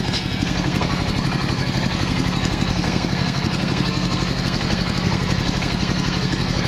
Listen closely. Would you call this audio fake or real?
fake